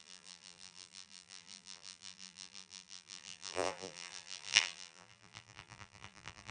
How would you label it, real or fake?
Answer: fake